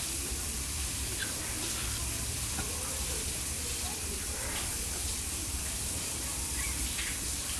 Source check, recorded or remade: remade